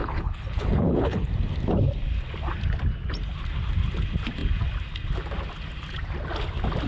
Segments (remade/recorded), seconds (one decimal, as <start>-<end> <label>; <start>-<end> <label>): 0.0-1.3 remade; 1.3-6.9 recorded